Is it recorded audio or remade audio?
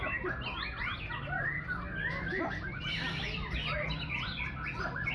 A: recorded